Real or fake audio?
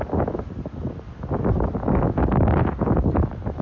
real